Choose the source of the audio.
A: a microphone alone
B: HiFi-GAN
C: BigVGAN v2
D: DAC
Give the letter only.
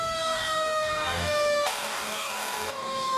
D